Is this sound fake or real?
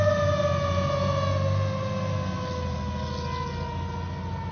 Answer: real